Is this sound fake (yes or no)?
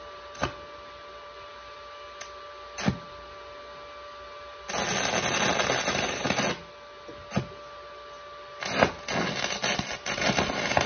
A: no